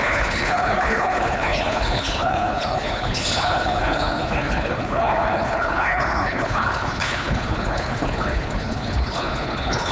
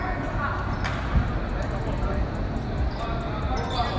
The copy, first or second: first